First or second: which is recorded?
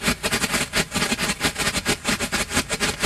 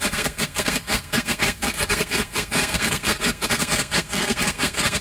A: first